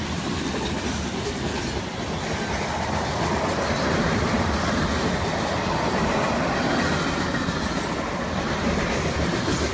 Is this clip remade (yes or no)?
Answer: no